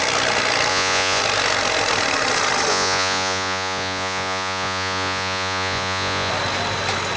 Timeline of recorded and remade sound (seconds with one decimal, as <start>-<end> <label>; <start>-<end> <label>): 0.0-0.7 recorded; 0.7-1.2 remade; 1.2-2.7 recorded; 2.7-6.3 remade; 6.3-7.2 recorded